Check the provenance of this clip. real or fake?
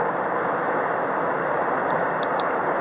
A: real